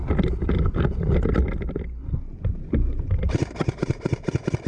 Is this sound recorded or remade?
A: recorded